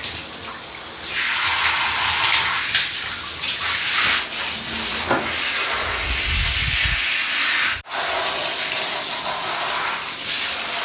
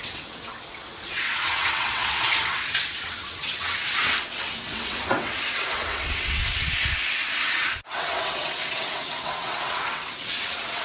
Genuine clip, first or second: first